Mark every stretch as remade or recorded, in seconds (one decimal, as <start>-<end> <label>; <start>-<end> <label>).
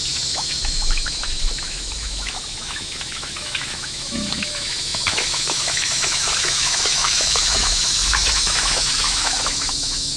0.0-10.2 remade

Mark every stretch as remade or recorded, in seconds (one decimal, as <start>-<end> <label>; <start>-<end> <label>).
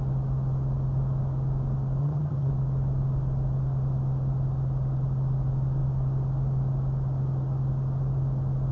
0.0-2.0 recorded; 2.0-2.5 remade; 2.5-8.7 recorded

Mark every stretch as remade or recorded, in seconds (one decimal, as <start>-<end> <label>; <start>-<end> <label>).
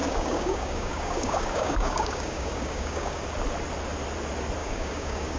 0.0-3.2 remade; 3.2-4.6 recorded; 4.6-5.4 remade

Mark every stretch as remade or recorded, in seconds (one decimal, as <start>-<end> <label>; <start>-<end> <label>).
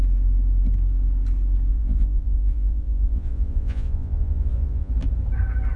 0.0-1.7 recorded; 1.7-4.9 remade; 4.9-5.8 recorded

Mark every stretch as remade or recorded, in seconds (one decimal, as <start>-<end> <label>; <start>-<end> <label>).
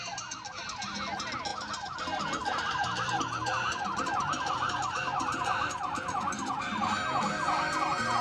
0.0-2.4 recorded; 2.4-6.5 remade; 6.5-8.2 recorded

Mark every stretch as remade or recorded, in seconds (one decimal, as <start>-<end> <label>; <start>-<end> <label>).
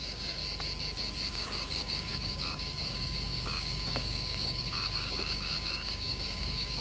0.0-0.4 remade; 0.4-1.3 recorded; 1.3-6.8 remade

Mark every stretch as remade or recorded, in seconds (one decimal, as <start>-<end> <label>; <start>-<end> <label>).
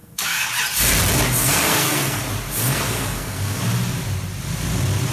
0.0-0.5 remade; 0.5-1.4 recorded; 1.4-2.2 remade; 2.2-2.6 recorded; 2.6-3.6 remade; 3.6-5.1 recorded